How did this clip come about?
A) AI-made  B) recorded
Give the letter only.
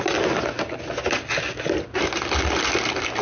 B